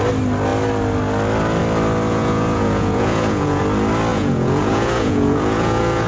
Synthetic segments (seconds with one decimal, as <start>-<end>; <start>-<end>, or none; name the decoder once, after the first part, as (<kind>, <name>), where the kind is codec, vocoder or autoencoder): 2.1-3.6 (vocoder, Vocos); 4.1-6.1